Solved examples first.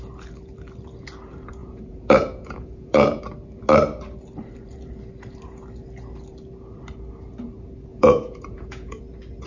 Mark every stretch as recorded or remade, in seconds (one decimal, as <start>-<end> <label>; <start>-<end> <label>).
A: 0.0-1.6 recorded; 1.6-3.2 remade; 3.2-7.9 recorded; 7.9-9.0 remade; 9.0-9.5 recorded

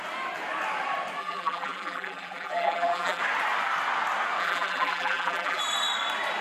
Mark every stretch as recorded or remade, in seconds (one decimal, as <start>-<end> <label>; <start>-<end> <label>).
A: 0.0-1.2 recorded; 1.2-3.2 remade; 3.2-4.4 recorded; 4.4-5.6 remade; 5.6-6.4 recorded

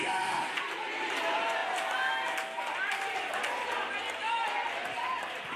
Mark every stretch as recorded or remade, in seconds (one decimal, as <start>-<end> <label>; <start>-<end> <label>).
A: 0.0-5.6 recorded